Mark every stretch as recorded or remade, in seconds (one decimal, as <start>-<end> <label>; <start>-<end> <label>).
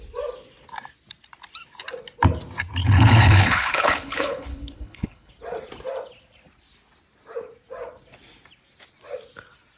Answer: 0.0-2.8 recorded; 2.8-5.3 remade; 5.3-9.8 recorded